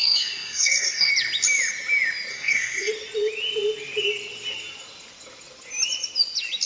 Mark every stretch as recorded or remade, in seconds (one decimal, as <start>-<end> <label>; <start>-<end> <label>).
0.0-1.1 remade; 1.1-2.3 recorded; 2.3-2.9 remade; 2.9-6.7 recorded